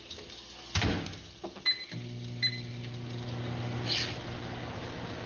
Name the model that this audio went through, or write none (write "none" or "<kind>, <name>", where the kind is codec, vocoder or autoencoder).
none